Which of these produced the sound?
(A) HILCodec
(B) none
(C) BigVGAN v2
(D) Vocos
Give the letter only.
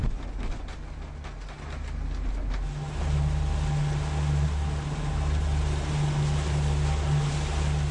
B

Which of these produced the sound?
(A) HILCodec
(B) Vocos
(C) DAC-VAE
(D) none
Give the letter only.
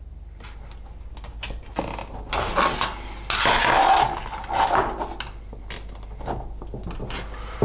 D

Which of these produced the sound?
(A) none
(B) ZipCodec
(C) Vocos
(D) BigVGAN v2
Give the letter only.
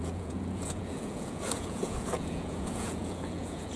C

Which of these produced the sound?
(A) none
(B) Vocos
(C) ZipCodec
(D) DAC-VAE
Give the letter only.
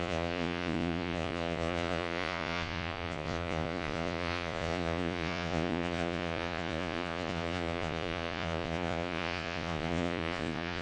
B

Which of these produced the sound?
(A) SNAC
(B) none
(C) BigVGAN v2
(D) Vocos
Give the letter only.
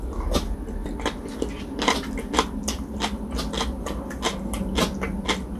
B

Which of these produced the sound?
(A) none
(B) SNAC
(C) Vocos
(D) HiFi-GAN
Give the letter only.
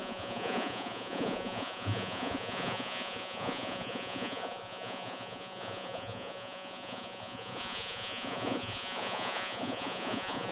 C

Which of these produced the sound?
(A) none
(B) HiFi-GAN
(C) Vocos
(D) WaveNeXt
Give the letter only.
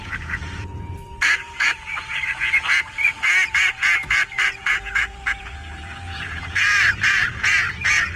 C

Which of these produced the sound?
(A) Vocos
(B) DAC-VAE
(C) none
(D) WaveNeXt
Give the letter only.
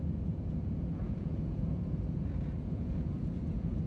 A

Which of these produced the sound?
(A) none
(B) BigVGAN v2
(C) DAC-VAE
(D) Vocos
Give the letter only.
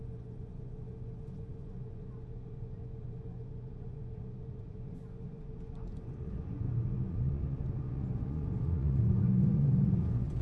D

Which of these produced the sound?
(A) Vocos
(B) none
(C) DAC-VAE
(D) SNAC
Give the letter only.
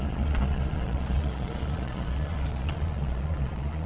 A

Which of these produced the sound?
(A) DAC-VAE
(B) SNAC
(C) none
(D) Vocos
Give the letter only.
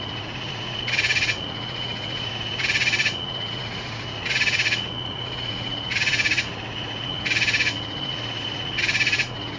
D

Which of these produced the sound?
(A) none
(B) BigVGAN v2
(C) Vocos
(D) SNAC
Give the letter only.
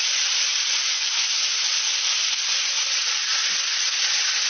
A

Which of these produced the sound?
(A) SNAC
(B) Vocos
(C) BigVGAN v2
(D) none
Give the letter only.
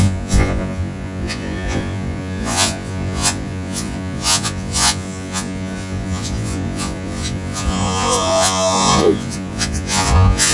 B